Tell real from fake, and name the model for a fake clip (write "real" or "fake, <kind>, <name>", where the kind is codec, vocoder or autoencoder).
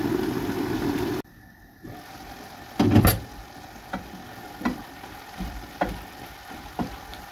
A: real